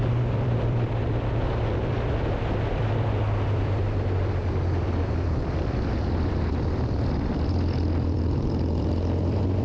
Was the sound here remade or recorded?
remade